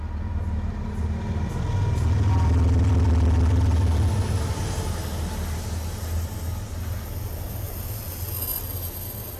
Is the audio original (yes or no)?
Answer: yes